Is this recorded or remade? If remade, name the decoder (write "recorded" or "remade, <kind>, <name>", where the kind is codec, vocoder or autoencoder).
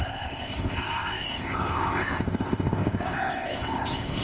remade, codec, ZipCodec